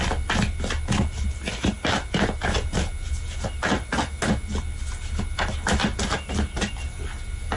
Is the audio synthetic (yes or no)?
no